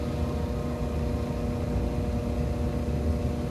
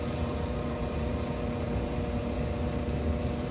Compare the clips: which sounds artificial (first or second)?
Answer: second